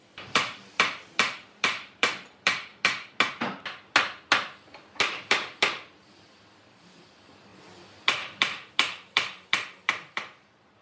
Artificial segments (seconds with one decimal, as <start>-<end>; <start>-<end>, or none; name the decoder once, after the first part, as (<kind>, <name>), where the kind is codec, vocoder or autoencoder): 0.0-2.7 (vocoder, BigVGAN v2); 5.1-7.5; 8.2-10.8